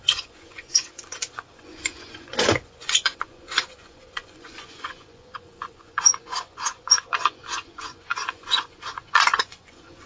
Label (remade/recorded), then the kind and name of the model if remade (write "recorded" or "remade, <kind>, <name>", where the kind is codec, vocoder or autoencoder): remade, vocoder, Vocos